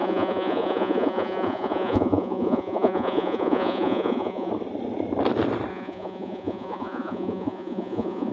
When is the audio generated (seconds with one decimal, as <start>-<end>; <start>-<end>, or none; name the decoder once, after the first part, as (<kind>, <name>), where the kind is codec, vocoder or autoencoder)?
0.0-4.5 (vocoder, Vocos); 5.7-8.3